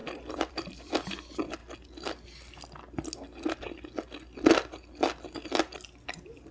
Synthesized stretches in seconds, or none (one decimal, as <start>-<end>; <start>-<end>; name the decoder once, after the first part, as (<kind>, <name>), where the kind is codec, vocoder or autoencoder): 0.0-0.9 (vocoder, BigVGAN v2)